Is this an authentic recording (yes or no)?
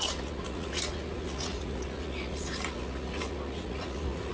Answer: no